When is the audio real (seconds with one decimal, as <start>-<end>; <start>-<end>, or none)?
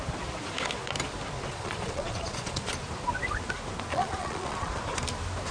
0.0-1.5; 2.7-3.9; 4.8-5.5